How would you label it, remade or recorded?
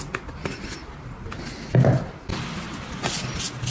recorded